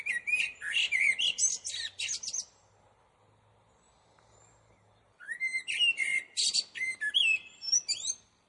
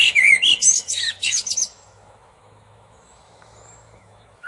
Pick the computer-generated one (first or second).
second